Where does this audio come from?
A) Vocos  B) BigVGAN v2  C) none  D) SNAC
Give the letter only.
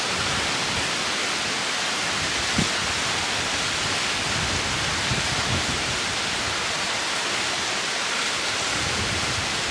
C